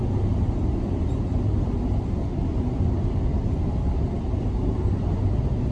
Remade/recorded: recorded